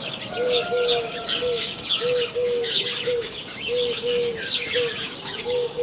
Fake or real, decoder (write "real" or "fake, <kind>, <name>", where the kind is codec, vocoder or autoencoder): fake, codec, DAC